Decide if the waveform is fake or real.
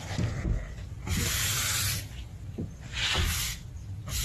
real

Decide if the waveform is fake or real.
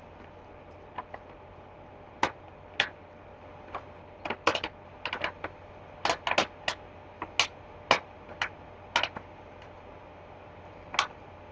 real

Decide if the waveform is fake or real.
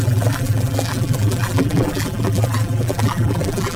fake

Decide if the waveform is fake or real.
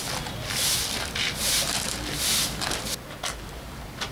real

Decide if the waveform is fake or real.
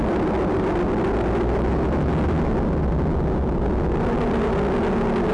real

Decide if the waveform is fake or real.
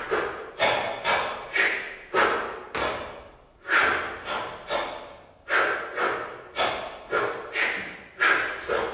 real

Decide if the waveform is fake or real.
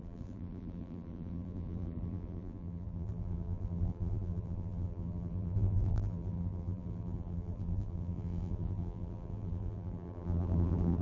fake